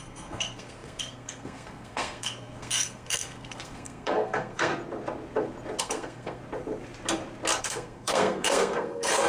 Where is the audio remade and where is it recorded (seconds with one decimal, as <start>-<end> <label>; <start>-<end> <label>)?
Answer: 0.0-4.7 remade; 4.7-5.8 recorded; 5.8-6.4 remade; 6.4-7.6 recorded; 7.6-9.3 remade